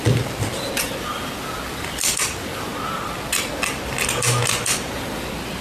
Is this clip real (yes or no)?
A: yes